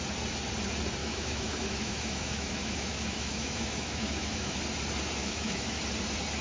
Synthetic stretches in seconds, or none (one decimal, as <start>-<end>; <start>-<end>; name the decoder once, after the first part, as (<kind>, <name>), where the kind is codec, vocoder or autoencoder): 1.0-4.6 (autoencoder, DAC-VAE); 5.2-5.8